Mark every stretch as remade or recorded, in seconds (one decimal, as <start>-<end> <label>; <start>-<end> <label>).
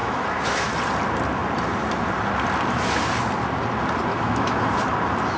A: 0.0-0.7 remade; 0.7-4.1 recorded; 4.1-4.7 remade; 4.7-5.4 recorded